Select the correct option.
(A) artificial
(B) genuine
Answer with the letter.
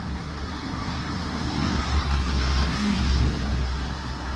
A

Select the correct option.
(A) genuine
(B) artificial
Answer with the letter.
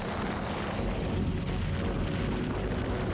A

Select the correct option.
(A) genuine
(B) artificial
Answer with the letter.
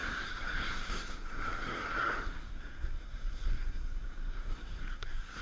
B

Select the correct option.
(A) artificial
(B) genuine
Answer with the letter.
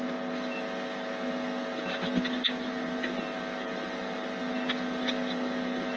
B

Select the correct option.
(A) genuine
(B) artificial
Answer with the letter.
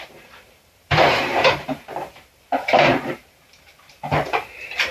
B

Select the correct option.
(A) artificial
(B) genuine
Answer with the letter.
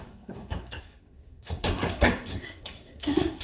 A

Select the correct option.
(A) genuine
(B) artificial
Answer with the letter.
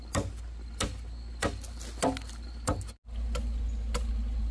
A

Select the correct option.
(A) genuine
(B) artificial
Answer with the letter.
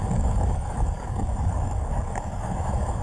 B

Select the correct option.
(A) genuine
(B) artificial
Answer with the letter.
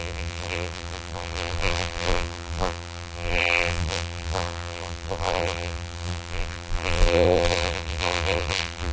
B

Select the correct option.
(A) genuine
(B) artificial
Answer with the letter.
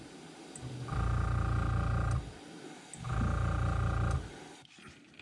A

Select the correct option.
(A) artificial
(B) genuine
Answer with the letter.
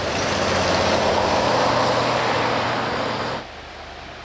B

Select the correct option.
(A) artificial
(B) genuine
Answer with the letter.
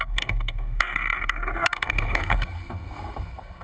A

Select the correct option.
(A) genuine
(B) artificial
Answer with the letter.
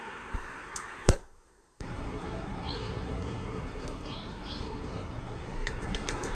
B